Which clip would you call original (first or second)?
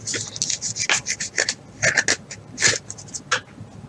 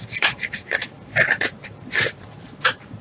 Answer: first